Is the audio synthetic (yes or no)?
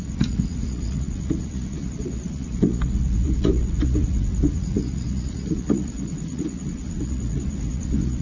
yes